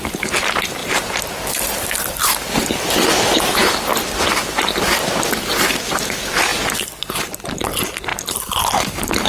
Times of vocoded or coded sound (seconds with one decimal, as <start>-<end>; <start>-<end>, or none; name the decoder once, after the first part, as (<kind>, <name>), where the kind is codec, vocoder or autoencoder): 0.0-3.5 (vocoder, BigVGAN v2); 4.0-6.5; 7.1-9.3